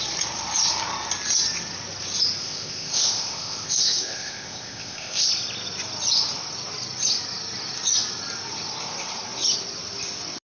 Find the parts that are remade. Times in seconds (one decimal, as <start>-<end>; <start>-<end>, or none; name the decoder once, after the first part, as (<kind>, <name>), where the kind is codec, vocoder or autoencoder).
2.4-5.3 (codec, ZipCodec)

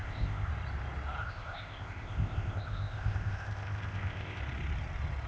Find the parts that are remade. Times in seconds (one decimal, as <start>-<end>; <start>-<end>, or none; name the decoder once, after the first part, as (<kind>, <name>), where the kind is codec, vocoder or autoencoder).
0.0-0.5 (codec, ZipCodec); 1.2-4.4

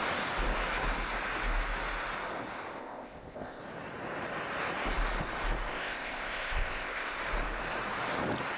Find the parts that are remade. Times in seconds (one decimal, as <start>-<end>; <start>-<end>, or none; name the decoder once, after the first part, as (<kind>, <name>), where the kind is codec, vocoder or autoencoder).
2.8-3.6 (codec, ZipCodec); 5.7-7.2